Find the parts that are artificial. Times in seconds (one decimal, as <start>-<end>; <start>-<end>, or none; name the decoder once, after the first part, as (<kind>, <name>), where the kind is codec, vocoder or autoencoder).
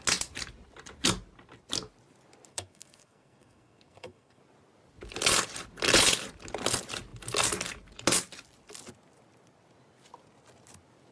2.5-4.4 (codec, SNAC)